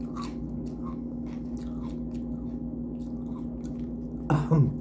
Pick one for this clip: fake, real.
real